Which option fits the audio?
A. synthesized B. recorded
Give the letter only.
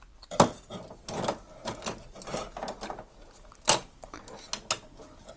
B